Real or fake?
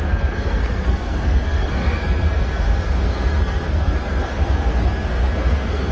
fake